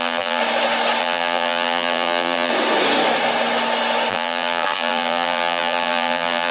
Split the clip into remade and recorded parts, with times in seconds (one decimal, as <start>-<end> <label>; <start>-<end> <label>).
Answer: 0.0-0.4 remade; 0.4-1.0 recorded; 1.0-2.5 remade; 2.5-4.1 recorded; 4.1-6.5 remade